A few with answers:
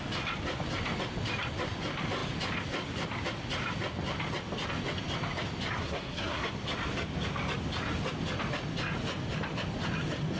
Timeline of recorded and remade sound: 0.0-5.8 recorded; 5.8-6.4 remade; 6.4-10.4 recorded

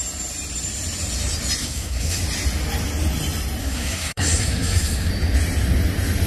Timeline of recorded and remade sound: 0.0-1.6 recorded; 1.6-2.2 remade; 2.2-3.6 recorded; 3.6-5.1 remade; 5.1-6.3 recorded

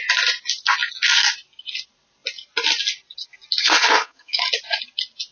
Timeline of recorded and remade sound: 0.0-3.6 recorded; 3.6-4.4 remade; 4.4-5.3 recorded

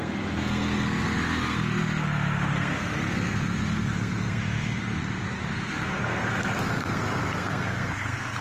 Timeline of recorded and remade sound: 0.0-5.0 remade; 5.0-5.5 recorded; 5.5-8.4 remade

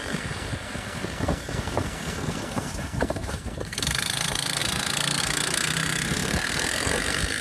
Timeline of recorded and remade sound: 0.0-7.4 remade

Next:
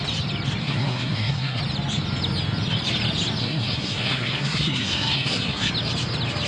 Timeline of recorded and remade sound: 0.0-0.6 recorded; 0.6-1.6 remade; 1.6-3.4 recorded; 3.4-5.7 remade; 5.7-6.5 recorded